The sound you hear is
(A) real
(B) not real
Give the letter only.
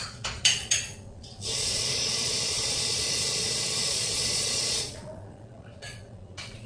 B